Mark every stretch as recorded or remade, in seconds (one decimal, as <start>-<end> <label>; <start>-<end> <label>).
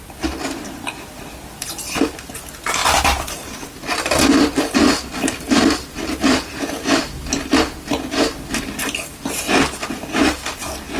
0.0-11.0 recorded